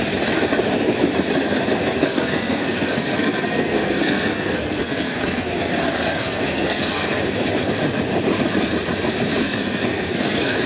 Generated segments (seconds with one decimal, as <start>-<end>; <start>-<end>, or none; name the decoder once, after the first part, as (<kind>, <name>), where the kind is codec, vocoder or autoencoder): 2.0-5.5 (codec, SNAC); 6.1-7.2; 9.4-10.7